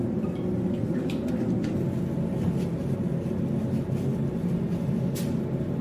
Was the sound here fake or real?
real